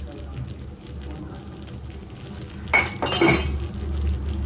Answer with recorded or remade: recorded